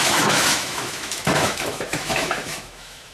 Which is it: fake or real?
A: fake